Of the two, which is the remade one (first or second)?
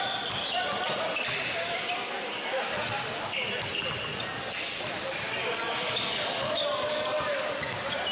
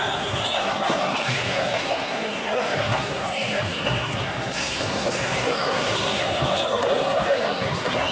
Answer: second